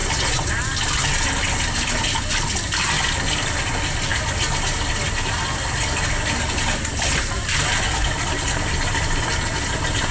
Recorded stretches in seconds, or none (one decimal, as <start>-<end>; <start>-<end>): 0.0-10.1